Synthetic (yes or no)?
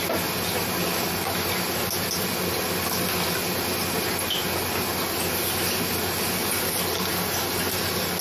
no